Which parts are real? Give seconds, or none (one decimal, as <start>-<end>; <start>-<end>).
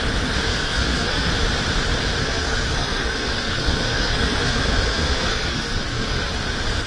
0.0-0.5; 1.3-2.2; 6.3-6.9